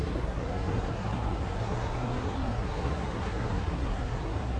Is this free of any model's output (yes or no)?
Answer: no